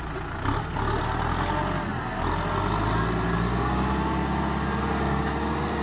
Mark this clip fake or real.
real